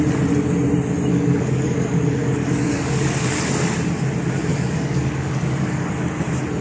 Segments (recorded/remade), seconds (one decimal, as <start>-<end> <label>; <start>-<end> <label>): 0.0-1.1 recorded; 1.1-3.4 remade; 3.4-4.5 recorded; 4.5-5.9 remade; 5.9-6.6 recorded